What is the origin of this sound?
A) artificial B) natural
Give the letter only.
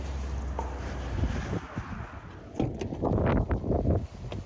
B